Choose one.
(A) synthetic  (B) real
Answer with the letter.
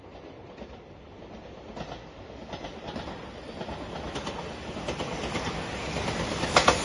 B